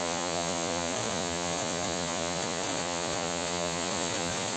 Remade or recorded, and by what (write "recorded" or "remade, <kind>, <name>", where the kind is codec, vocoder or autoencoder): remade, vocoder, Vocos